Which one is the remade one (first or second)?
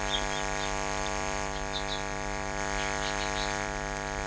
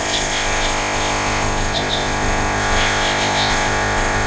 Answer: second